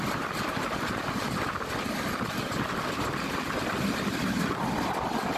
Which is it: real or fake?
real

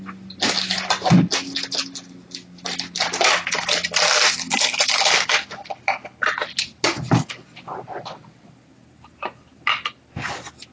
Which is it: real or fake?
real